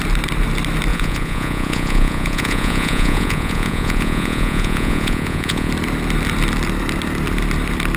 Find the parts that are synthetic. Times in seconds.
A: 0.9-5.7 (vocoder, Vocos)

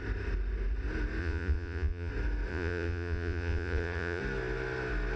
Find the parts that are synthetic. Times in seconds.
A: 1.2-2.1 (vocoder, Vocos); 2.5-4.2

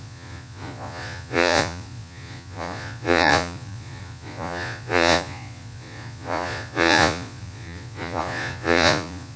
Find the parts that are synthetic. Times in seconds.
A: 0.0-9.4 (vocoder, Vocos)

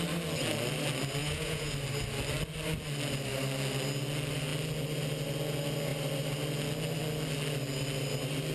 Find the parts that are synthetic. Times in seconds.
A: 1.2-1.7 (vocoder, Vocos)

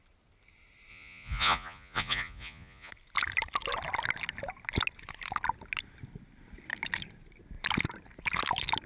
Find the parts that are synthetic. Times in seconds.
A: 0.9-2.9 (vocoder, Vocos)